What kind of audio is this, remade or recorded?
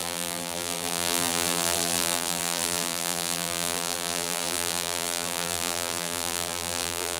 remade